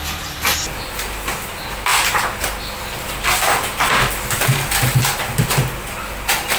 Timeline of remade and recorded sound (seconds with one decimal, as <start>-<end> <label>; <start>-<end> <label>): 0.0-6.6 recorded

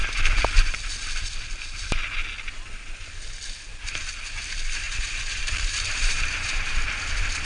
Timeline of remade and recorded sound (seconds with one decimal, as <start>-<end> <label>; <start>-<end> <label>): 0.0-5.4 recorded; 5.4-6.7 remade; 6.7-7.4 recorded

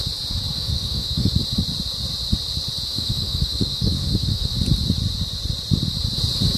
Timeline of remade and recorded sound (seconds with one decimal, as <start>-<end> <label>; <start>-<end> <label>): 0.0-0.5 recorded; 0.5-1.3 remade; 1.3-2.9 recorded; 2.9-4.5 remade; 4.5-6.6 recorded

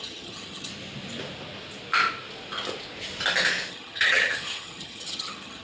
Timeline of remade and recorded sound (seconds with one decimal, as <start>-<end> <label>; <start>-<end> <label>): 0.0-0.7 remade; 0.7-3.7 recorded; 3.7-5.6 remade

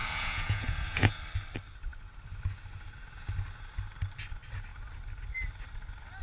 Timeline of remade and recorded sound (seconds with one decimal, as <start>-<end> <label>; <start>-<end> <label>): 0.0-1.2 remade; 1.2-6.2 recorded

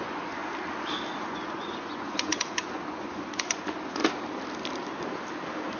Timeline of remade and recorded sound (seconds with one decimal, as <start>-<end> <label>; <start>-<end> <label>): 0.0-0.4 remade; 0.4-1.2 recorded; 1.2-4.0 remade; 4.0-5.8 recorded

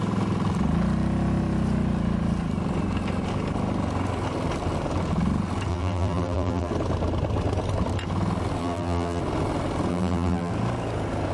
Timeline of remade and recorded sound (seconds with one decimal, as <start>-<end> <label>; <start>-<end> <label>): 0.0-5.7 recorded; 5.7-6.7 remade; 6.7-8.6 recorded; 8.6-9.2 remade; 9.2-9.9 recorded; 9.9-10.5 remade; 10.5-11.3 recorded

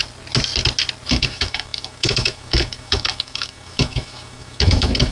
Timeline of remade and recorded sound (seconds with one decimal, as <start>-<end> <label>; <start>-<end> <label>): 0.0-1.1 recorded; 1.1-5.1 remade